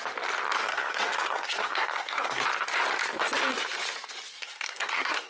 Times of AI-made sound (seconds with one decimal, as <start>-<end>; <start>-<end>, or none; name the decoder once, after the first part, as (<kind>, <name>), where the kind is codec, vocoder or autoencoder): 0.6-2.4 (codec, SNAC); 4.4-5.3

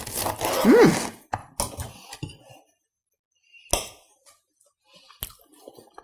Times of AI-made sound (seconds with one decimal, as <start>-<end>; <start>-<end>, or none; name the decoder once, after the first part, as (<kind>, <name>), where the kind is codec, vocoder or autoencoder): none